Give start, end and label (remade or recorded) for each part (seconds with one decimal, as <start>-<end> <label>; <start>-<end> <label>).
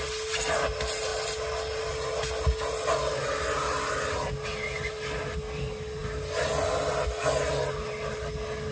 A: 0.0-8.7 recorded